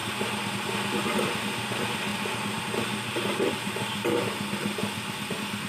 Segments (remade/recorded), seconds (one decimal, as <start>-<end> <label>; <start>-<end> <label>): 0.0-0.5 remade; 0.5-2.1 recorded; 2.1-2.6 remade; 2.6-5.7 recorded